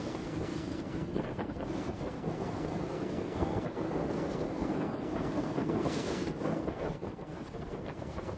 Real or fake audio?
fake